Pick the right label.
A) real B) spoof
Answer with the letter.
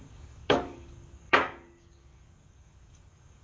B